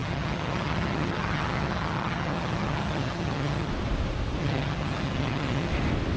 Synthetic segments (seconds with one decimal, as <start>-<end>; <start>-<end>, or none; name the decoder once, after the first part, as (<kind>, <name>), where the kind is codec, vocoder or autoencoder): 0.0-3.7 (vocoder, HiFi-GAN); 4.4-5.7